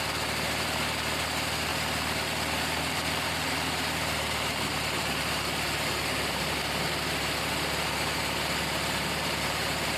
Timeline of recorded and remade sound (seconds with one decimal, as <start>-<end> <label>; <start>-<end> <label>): 0.0-1.7 remade; 1.7-2.6 recorded; 2.6-10.0 remade